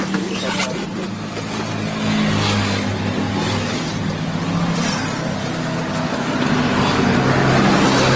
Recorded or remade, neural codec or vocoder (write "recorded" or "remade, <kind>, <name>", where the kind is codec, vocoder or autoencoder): recorded